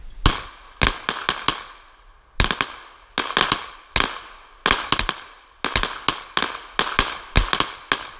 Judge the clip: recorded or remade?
recorded